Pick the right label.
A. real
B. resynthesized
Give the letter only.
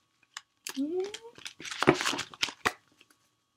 B